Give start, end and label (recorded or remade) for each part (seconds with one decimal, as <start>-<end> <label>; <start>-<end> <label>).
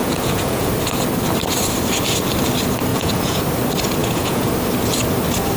0.0-0.7 remade; 0.7-2.9 recorded; 2.9-3.4 remade; 3.4-4.0 recorded; 4.0-4.5 remade; 4.5-5.6 recorded